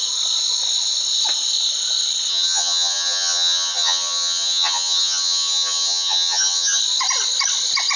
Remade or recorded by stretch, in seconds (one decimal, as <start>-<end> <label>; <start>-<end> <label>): 0.0-2.3 recorded; 2.3-6.8 remade; 6.8-8.0 recorded